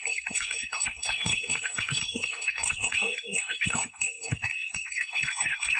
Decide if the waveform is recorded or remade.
remade